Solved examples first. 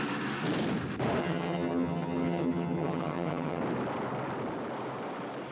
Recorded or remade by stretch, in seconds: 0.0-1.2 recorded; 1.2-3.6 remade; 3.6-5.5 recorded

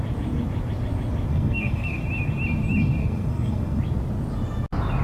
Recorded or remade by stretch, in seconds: 0.0-1.3 recorded; 1.3-2.0 remade; 2.0-3.0 recorded; 3.0-3.8 remade; 3.8-5.0 recorded

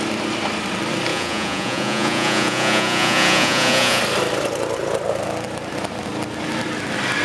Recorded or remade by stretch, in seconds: 0.0-1.1 recorded; 1.1-4.0 remade; 4.0-7.2 recorded

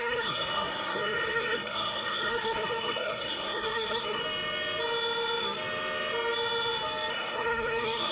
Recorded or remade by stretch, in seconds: 0.0-4.2 remade; 4.2-7.1 recorded; 7.1-8.1 remade

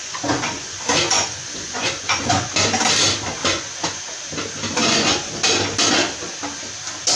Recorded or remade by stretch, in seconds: 0.0-2.6 remade; 2.6-3.4 recorded; 3.4-4.0 remade; 4.0-4.7 recorded; 4.7-5.3 remade; 5.3-7.1 recorded

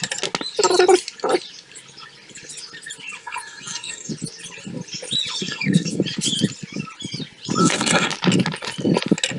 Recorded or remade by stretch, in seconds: 0.0-3.2 recorded; 3.2-4.1 remade; 4.1-5.4 recorded; 5.4-6.0 remade; 6.0-7.6 recorded; 7.6-8.1 remade; 8.1-9.4 recorded

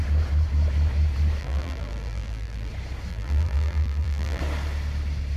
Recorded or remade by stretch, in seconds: 0.0-1.4 recorded; 1.4-2.7 remade; 2.7-3.1 recorded; 3.1-4.4 remade; 4.4-5.4 recorded